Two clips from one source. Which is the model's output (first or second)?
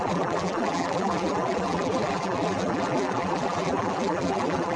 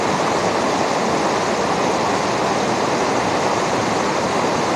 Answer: first